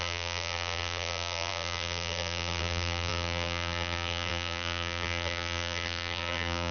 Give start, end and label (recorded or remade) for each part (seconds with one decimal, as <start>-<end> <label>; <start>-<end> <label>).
0.0-6.7 remade